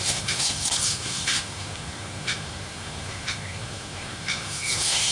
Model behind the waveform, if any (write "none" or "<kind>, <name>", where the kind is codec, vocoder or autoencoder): codec, SNAC